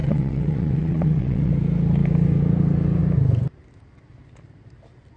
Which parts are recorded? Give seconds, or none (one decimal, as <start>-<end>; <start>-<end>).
1.5-5.2